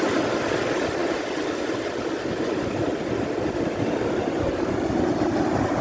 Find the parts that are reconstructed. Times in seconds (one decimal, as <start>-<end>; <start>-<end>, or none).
none